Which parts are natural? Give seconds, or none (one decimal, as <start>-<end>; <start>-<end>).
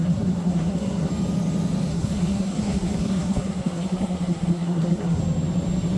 1.1-1.9; 5.2-6.0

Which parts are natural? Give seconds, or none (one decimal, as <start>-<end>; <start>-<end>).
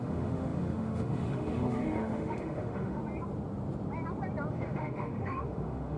3.0-4.5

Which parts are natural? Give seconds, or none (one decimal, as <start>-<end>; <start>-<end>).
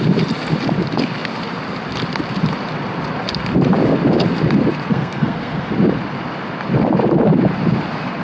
0.0-4.9; 5.7-8.2